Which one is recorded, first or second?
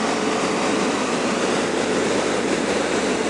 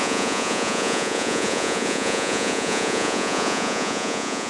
first